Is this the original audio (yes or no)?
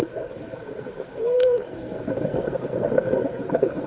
no